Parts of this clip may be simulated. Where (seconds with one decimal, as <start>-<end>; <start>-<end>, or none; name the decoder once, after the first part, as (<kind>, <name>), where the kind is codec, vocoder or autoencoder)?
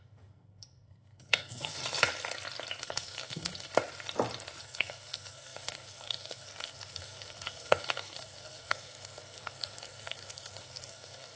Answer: 0.0-1.8 (codec, SNAC); 2.8-3.7; 4.6-11.4